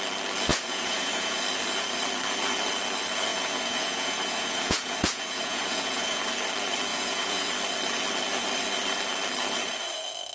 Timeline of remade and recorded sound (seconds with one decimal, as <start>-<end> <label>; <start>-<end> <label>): 0.0-0.5 recorded; 0.5-1.4 remade; 1.4-3.3 recorded; 3.3-6.2 remade; 6.2-6.9 recorded; 6.9-7.5 remade; 7.5-10.3 recorded